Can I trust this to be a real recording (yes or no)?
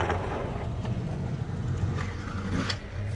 no